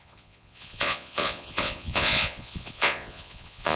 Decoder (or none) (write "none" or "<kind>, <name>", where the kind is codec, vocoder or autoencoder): vocoder, Vocos